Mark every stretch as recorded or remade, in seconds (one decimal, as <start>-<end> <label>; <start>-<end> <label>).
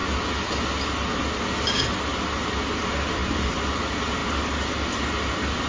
0.0-5.7 recorded